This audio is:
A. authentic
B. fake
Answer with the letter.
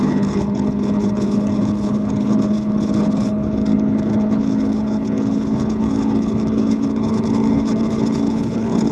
B